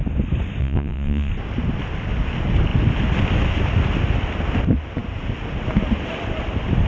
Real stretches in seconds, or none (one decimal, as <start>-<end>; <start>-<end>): 0.0-0.6; 1.3-6.9